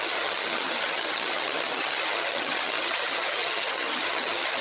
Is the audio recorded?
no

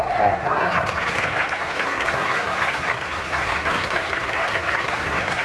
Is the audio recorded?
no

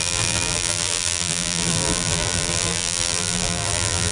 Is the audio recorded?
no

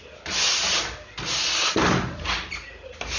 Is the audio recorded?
yes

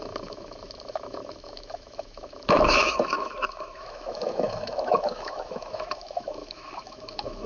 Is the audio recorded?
no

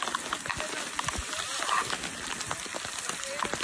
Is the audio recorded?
yes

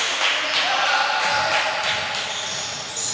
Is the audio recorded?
yes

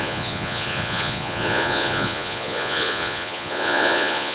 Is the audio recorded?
no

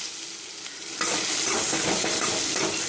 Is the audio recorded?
yes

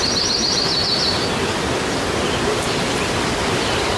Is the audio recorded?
yes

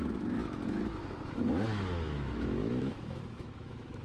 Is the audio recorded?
no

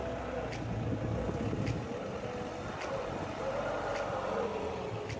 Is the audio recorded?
yes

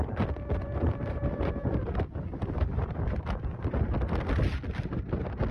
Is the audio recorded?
no